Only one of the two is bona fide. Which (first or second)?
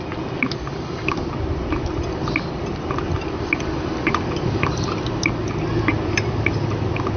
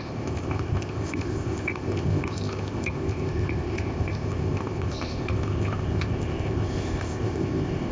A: first